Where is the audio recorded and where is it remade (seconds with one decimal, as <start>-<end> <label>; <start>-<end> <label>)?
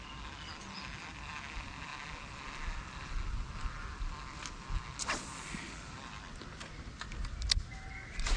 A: 0.0-8.4 recorded